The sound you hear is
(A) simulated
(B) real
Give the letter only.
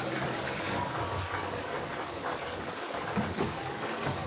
A